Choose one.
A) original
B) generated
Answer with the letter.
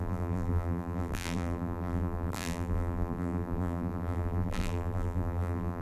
B